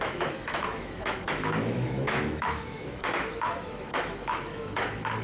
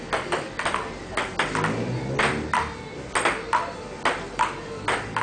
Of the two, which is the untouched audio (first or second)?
second